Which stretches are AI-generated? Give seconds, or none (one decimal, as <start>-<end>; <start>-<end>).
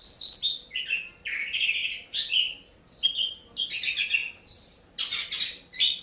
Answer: none